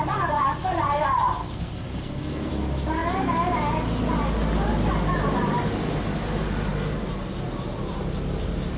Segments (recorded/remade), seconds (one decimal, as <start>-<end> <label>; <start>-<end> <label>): 0.0-1.4 recorded; 1.4-2.5 remade; 2.5-8.8 recorded